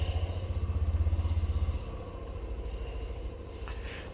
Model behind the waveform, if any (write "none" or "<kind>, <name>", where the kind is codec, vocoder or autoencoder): none